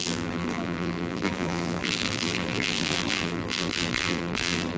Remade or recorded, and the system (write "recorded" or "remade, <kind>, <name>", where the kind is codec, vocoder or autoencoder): remade, vocoder, BigVGAN v2